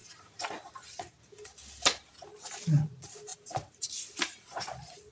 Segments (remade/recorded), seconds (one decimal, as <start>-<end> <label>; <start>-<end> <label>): 0.0-5.1 recorded